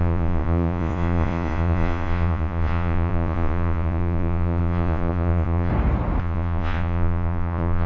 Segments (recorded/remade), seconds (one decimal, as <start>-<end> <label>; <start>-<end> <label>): 0.0-5.7 remade; 5.7-6.2 recorded; 6.2-7.9 remade